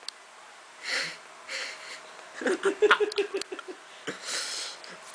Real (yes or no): yes